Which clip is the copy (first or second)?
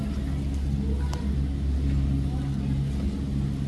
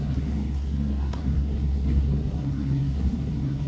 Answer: second